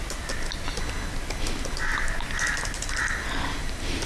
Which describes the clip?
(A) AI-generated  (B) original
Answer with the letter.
B